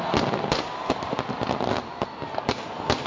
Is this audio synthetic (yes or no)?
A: no